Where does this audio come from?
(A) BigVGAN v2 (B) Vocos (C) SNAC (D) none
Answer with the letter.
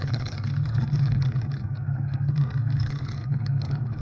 C